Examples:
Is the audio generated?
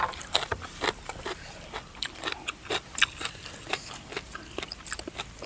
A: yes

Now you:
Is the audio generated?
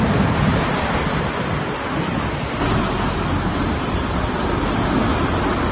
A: no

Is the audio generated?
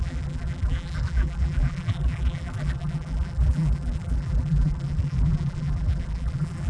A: yes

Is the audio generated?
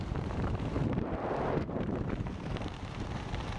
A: yes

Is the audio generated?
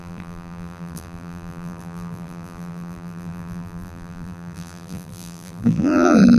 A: yes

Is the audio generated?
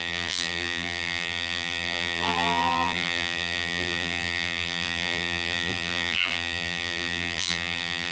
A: yes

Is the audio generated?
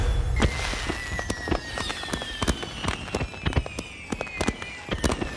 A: no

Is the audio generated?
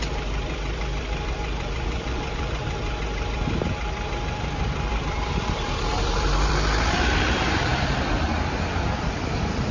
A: yes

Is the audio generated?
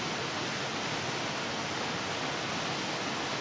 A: no